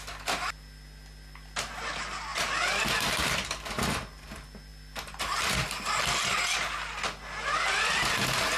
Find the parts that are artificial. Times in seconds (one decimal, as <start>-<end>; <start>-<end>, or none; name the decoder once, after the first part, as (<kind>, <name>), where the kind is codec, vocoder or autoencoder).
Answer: none